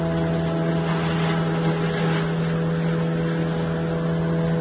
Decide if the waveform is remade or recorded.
recorded